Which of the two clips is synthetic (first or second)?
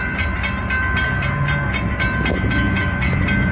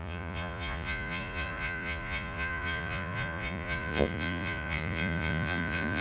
second